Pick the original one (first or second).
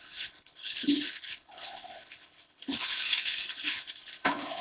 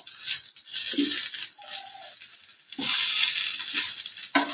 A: second